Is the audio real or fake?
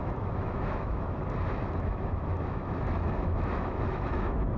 fake